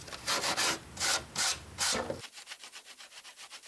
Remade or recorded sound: recorded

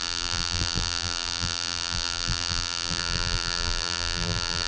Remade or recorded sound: remade